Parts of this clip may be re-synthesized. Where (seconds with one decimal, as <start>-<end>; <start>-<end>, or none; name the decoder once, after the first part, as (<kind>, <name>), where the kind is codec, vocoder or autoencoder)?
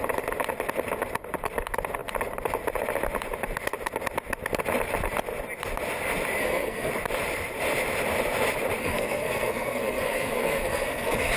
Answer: 6.4-6.9 (codec, SNAC); 8.8-11.4